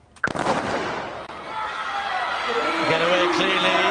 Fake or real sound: real